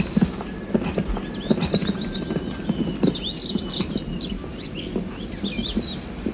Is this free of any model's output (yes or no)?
yes